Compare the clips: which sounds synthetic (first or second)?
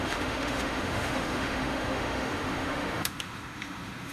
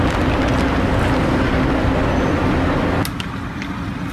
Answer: first